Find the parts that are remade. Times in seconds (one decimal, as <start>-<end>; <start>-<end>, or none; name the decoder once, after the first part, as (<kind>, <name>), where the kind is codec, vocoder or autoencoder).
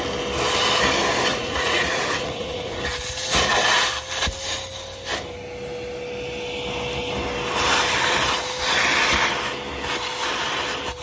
1.3-2.8 (vocoder, Vocos)